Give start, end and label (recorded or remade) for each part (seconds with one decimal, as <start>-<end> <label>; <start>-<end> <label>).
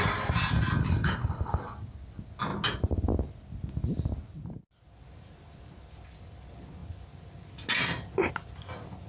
0.0-0.8 recorded; 0.8-1.6 remade; 1.6-9.1 recorded